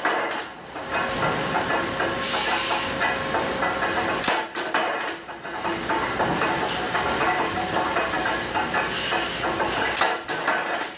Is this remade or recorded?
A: recorded